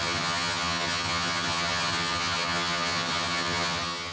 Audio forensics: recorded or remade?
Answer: remade